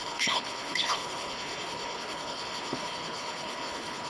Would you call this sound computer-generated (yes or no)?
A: yes